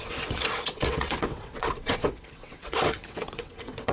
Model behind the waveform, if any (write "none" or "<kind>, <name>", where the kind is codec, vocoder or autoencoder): vocoder, WaveNeXt